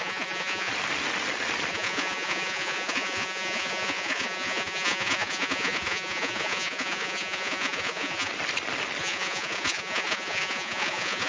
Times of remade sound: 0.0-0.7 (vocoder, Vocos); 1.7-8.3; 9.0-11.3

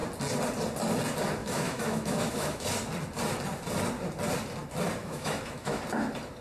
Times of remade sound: 1.4-2.7 (autoencoder, DAC-VAE); 5.0-5.8